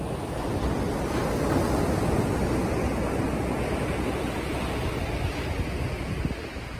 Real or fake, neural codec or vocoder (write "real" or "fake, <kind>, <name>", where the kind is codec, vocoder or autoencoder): real